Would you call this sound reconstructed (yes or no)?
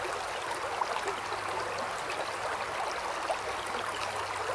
no